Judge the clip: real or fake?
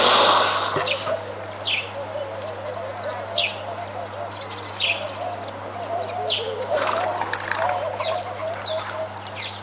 real